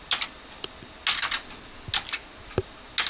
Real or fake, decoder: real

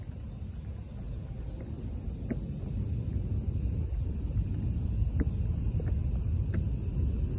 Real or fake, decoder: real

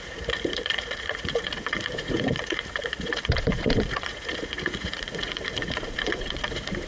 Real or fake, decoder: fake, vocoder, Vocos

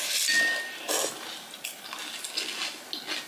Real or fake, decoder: real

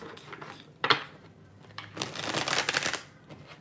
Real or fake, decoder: real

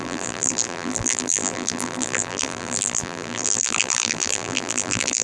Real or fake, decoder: fake, vocoder, BigVGAN v2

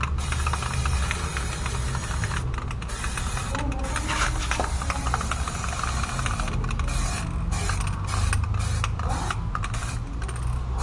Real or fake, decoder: real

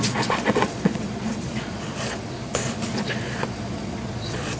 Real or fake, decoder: fake, vocoder, Vocos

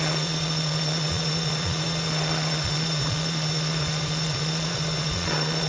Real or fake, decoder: fake, vocoder, Vocos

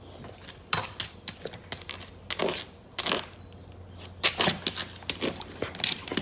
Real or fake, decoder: real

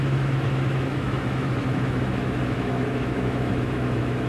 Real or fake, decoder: fake, autoencoder, DAC-VAE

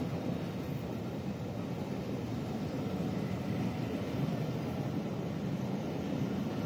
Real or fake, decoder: real